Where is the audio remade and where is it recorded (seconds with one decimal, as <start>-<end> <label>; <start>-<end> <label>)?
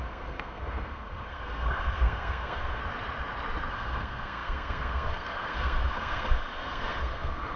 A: 0.0-2.8 remade; 2.8-3.7 recorded; 3.7-7.6 remade